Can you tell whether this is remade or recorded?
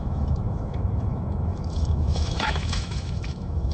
remade